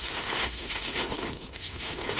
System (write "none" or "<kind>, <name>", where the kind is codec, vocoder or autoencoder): autoencoder, DAC-VAE